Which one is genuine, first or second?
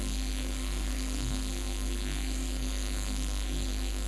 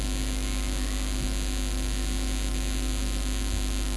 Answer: second